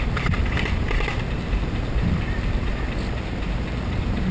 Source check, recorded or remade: recorded